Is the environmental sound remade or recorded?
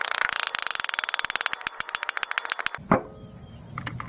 recorded